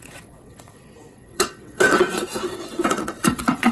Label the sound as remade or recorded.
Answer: remade